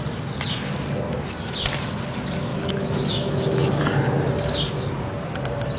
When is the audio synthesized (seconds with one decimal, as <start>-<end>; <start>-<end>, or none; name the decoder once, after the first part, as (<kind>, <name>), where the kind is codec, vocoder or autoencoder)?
2.5-3.7 (autoencoder, DAC-VAE)